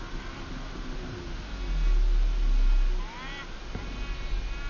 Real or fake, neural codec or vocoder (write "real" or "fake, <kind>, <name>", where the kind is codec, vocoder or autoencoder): real